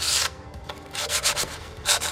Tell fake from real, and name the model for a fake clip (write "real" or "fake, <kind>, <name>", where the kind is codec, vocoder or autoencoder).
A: fake, codec, SNAC